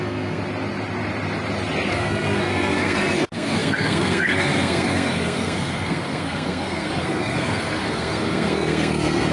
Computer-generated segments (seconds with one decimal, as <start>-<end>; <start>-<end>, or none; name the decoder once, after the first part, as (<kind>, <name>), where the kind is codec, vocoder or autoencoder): 0.0-0.4 (codec, SNAC); 1.9-9.3